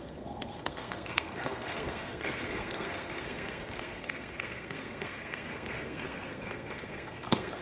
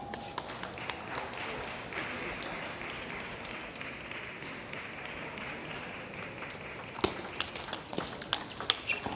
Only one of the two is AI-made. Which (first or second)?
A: first